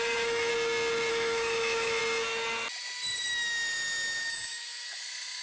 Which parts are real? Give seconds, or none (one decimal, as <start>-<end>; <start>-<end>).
0.5-1.1; 2.0-4.3